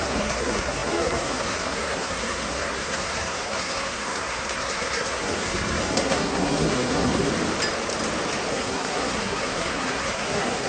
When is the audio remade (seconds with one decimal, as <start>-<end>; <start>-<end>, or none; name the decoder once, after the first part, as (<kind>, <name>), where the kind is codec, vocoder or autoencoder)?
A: 0.0-7.3 (codec, SNAC); 8.5-10.7